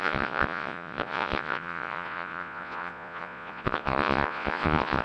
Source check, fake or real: fake